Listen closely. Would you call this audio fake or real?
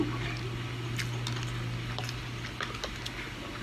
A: real